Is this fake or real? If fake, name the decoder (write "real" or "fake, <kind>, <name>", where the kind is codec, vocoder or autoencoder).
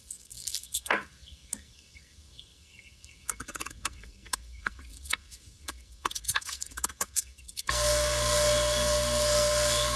fake, codec, SNAC